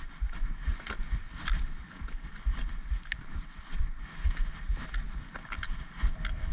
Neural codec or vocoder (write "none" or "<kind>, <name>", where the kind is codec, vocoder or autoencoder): none